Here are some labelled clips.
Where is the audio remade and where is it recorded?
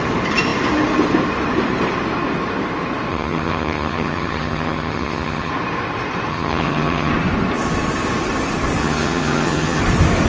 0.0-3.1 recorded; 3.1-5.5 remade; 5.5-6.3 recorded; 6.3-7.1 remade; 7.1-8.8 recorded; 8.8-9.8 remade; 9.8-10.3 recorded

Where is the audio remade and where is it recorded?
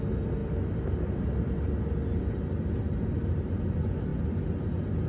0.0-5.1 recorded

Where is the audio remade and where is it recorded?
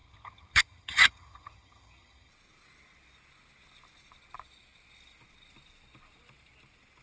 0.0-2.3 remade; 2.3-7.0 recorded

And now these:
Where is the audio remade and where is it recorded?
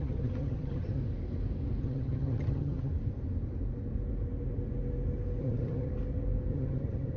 0.0-1.0 remade; 1.0-1.8 recorded; 1.8-2.9 remade; 2.9-5.4 recorded; 5.4-5.9 remade; 5.9-6.5 recorded; 6.5-7.2 remade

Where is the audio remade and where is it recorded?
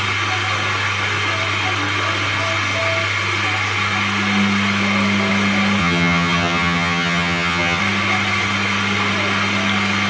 0.0-5.8 recorded; 5.8-7.8 remade; 7.8-10.1 recorded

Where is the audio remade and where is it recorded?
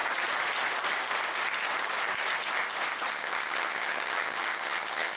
0.0-3.1 recorded; 3.1-5.2 remade